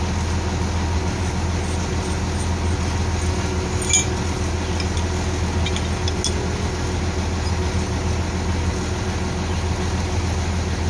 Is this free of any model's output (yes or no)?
yes